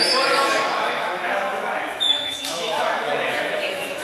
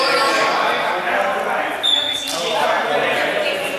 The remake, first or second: first